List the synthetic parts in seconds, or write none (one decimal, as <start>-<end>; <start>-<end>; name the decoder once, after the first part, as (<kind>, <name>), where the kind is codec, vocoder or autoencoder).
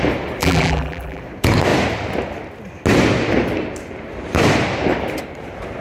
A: 0.4-1.2 (vocoder, BigVGAN v2)